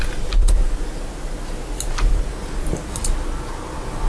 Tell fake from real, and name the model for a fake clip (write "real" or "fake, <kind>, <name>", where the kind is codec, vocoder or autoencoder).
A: real